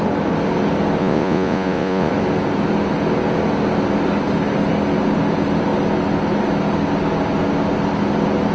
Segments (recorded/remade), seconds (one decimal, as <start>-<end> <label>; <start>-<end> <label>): 0.0-1.0 recorded; 1.0-2.1 remade; 2.1-8.5 recorded